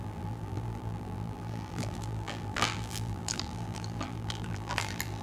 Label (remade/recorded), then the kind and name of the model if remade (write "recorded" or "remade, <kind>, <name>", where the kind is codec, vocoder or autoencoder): remade, vocoder, BigVGAN v2